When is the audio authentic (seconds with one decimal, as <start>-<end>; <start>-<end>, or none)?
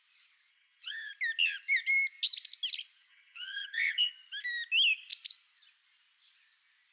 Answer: 0.0-0.5; 1.1-3.1; 4.1-6.9